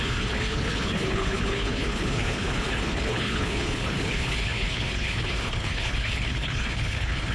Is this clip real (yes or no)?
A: no